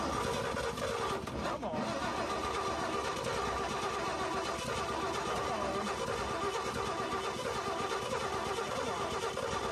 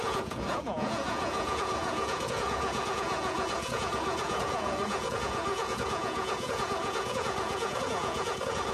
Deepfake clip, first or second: second